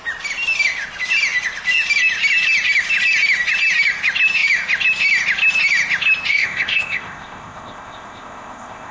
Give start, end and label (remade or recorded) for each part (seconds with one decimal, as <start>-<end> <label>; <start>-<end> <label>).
0.0-6.3 recorded; 6.3-8.9 remade